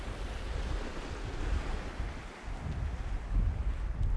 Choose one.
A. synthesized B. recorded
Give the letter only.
B